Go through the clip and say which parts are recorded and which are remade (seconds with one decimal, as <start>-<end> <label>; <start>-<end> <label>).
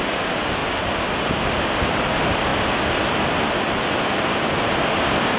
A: 0.0-5.4 recorded